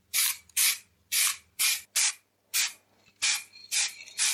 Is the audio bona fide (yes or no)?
yes